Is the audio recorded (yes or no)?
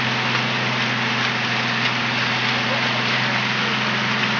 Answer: yes